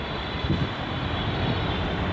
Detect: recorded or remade recorded